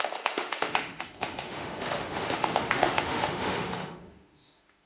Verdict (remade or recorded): remade